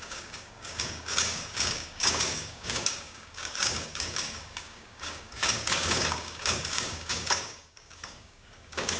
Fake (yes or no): yes